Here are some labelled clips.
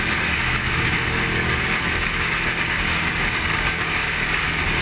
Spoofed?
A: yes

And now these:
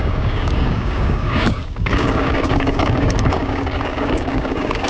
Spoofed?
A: yes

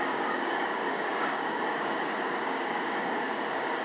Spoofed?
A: yes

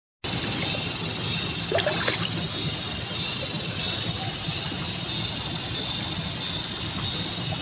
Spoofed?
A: no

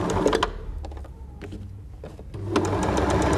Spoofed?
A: no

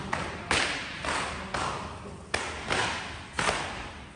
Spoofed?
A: no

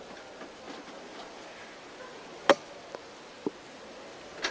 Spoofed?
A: no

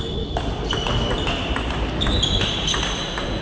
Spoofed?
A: no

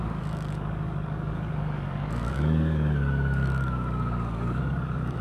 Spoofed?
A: yes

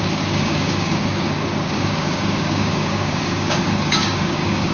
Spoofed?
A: yes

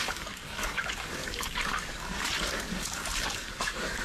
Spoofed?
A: yes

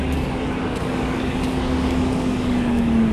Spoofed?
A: yes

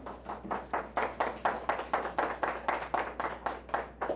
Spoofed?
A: no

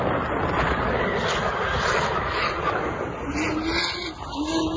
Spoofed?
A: no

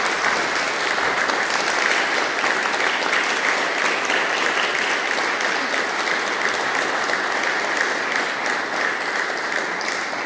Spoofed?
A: no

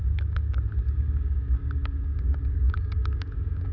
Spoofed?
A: yes